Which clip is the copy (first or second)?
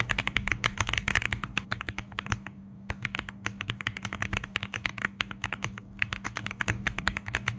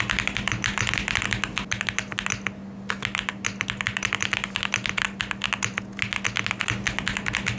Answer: first